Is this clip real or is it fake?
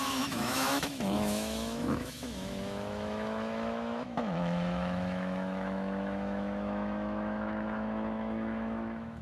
fake